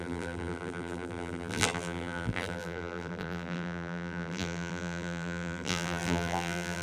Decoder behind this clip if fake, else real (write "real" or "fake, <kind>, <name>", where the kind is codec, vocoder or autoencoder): fake, vocoder, BigVGAN v2